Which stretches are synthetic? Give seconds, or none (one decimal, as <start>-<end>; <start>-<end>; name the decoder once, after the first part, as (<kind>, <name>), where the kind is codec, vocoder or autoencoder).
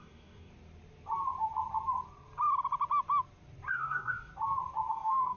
0.0-0.5 (codec, DAC); 3.7-4.3; 4.9-5.4